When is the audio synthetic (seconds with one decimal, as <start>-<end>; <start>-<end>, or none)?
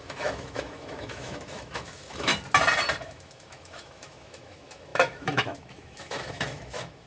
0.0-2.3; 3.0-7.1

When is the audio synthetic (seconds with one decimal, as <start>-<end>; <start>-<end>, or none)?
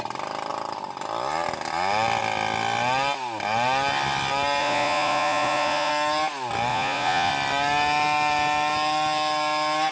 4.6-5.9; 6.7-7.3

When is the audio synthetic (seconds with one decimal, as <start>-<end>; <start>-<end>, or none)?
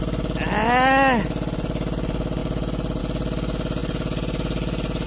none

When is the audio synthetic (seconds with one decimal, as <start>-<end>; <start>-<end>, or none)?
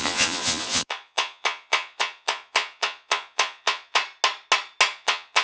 0.0-4.0; 4.9-5.4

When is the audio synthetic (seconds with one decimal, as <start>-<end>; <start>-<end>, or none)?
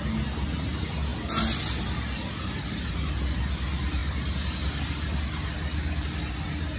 none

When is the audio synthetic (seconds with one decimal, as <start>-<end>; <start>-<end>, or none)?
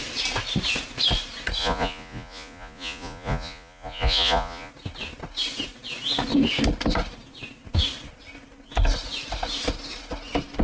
1.6-4.7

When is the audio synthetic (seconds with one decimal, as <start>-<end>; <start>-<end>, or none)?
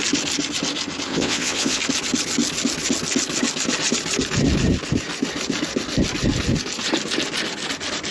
1.1-1.8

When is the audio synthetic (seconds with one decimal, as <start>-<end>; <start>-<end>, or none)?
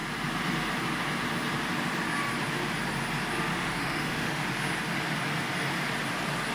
3.5-4.4